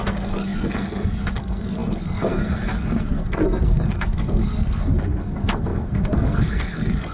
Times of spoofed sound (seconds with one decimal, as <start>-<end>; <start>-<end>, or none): 0.0-7.1